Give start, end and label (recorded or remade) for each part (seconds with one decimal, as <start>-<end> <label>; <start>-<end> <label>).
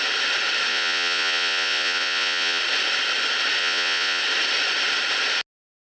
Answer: 0.0-0.7 recorded; 0.7-2.6 remade; 2.6-3.6 recorded; 3.6-4.2 remade; 4.2-5.8 recorded